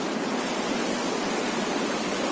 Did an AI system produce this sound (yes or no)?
no